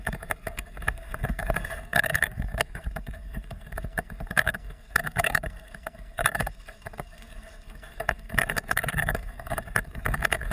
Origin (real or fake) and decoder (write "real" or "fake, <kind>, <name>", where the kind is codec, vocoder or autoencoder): fake, codec, SNAC